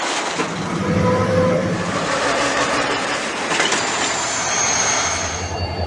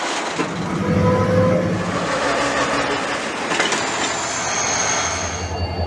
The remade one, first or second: first